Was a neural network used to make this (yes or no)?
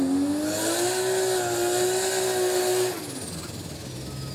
no